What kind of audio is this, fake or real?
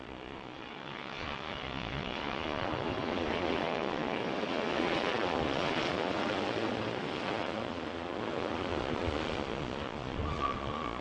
fake